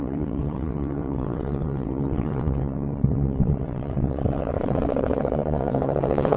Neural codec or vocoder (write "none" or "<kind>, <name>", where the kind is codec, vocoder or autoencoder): vocoder, WaveNeXt